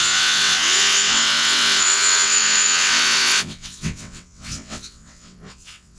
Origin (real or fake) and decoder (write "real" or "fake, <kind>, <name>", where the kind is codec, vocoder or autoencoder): fake, vocoder, WaveNeXt